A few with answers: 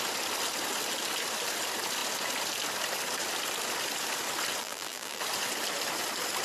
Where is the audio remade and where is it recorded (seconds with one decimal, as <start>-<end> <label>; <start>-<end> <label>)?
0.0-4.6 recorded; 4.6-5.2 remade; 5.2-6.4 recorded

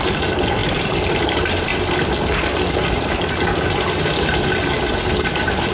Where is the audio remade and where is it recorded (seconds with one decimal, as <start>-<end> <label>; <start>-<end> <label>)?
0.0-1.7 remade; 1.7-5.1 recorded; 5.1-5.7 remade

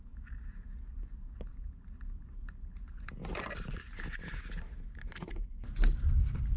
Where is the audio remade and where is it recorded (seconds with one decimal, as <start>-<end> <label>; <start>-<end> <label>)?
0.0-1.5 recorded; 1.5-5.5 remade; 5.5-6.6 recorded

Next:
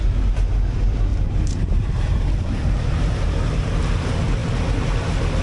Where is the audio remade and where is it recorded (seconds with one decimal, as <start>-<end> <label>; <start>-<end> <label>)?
0.0-1.1 recorded; 1.1-3.6 remade; 3.6-5.4 recorded

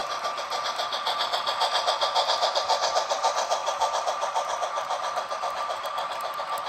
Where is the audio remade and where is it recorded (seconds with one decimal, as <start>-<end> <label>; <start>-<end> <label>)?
0.0-2.5 recorded; 2.5-6.7 remade

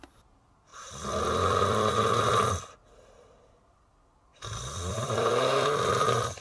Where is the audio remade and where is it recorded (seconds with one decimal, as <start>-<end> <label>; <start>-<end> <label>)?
0.0-0.7 recorded; 0.7-3.8 remade; 3.8-4.3 recorded; 4.3-6.4 remade